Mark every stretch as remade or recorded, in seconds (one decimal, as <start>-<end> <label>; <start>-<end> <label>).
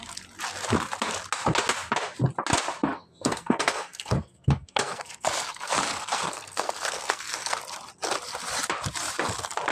0.0-2.9 recorded; 2.9-7.6 remade; 7.6-9.7 recorded